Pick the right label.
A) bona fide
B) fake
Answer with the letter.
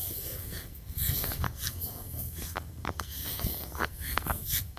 B